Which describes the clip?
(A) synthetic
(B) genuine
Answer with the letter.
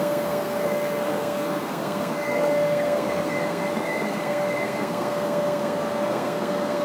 A